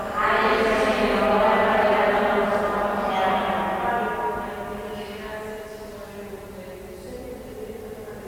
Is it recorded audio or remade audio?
recorded